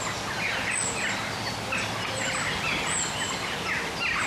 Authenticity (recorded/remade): recorded